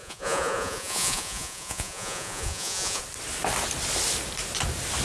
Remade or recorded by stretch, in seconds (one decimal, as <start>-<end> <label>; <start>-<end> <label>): 0.0-3.0 remade; 3.0-5.0 recorded